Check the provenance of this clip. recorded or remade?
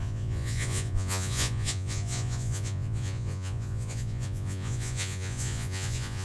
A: remade